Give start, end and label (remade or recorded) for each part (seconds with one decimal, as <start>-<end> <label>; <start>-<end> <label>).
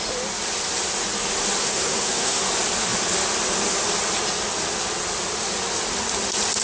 0.0-1.6 recorded; 1.6-2.4 remade; 2.4-6.6 recorded